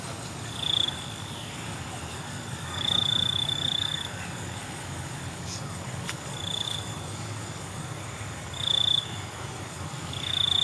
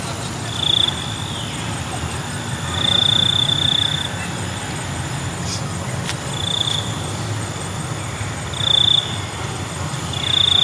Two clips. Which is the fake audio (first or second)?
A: first